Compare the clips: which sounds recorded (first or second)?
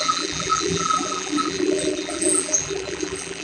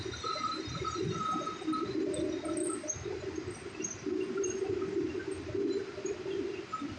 second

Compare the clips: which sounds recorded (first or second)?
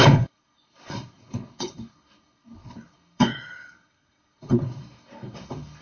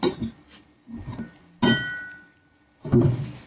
second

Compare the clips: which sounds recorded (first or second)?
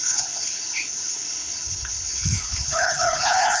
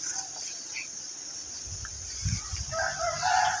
second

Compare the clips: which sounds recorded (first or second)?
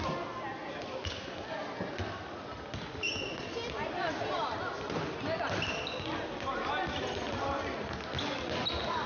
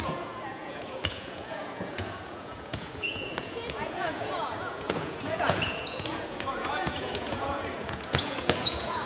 first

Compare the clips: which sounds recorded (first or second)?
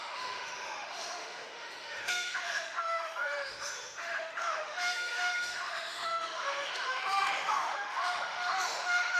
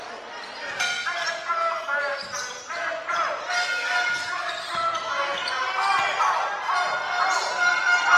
second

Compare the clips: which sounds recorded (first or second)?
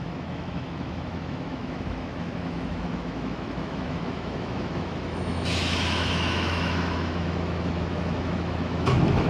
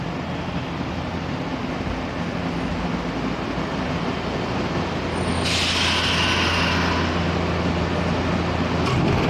second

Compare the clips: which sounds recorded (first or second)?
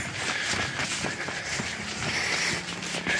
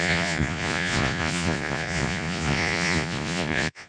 first